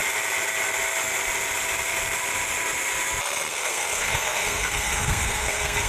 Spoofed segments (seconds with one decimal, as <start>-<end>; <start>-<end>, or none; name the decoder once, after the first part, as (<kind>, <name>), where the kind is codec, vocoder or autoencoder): 3.5-5.9 (codec, SNAC)